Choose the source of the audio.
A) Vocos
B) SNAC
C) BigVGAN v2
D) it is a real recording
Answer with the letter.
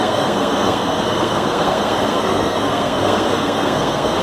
B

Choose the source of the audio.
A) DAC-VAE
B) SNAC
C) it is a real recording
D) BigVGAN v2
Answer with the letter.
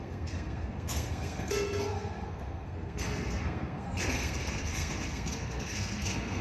B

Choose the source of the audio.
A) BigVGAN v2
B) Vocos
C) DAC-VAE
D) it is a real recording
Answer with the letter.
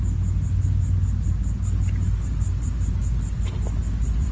D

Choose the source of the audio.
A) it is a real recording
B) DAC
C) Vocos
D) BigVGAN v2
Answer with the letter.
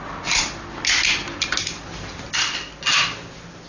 A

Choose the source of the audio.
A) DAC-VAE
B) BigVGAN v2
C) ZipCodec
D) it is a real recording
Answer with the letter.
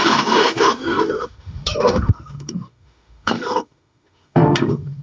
A